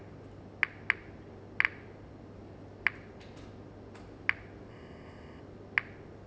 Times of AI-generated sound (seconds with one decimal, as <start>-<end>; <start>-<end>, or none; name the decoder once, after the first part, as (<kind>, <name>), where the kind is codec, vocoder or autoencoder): 4.7-5.4 (codec, ZipCodec)